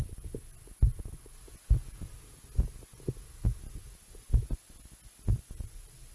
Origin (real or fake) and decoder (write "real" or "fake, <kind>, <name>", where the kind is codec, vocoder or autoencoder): real